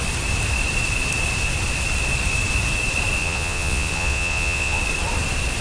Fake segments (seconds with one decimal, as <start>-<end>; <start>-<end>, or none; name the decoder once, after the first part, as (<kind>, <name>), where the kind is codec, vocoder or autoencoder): 3.2-4.8 (vocoder, Vocos)